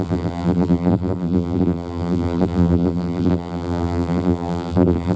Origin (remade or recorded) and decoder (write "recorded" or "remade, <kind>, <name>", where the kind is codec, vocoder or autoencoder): remade, vocoder, BigVGAN v2